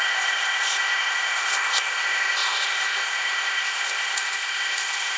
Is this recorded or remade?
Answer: remade